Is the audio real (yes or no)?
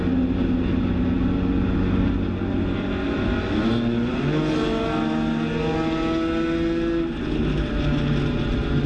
yes